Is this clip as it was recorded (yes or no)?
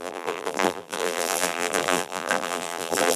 no